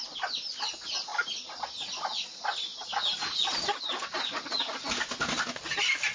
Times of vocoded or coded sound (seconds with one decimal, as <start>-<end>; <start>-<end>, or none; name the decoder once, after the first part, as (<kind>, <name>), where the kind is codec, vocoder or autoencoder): none